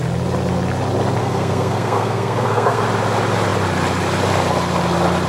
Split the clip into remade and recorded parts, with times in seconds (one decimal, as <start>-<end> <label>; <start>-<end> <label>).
0.0-1.2 recorded; 1.2-2.8 remade; 2.8-5.3 recorded